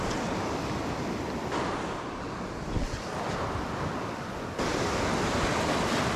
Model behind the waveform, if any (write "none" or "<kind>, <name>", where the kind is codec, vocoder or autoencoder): none